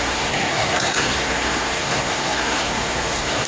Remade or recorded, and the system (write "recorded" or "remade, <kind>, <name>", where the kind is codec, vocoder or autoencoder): remade, codec, SNAC